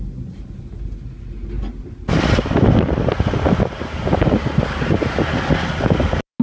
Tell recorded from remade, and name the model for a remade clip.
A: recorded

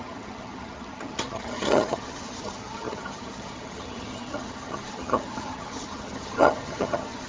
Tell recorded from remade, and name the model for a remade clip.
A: remade, vocoder, HiFi-GAN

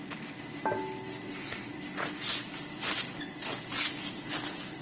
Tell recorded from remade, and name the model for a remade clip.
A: recorded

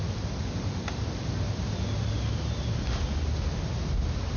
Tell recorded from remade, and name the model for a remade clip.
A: recorded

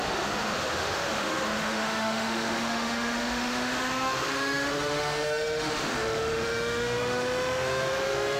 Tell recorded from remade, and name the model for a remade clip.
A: remade, autoencoder, DAC-VAE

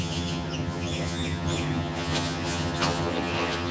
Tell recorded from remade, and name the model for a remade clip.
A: remade, vocoder, HiFi-GAN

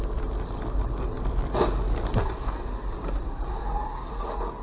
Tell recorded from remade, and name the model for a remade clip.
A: recorded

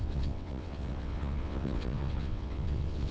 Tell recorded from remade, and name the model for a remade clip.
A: remade, vocoder, WaveNeXt